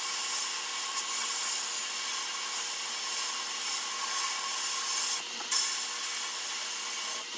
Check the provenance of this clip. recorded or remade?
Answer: recorded